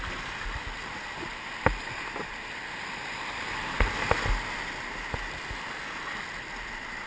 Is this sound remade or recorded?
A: recorded